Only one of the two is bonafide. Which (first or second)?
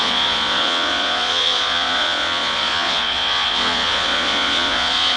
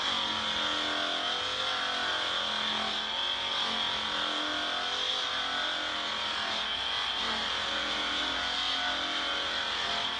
second